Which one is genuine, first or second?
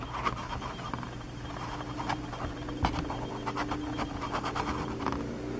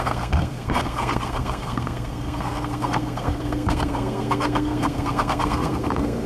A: first